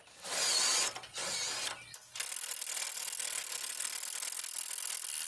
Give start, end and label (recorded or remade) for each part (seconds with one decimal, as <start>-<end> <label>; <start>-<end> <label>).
0.0-5.3 recorded